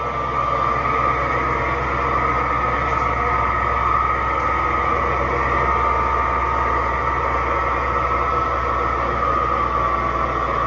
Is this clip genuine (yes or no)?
yes